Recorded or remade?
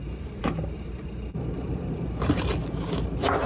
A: remade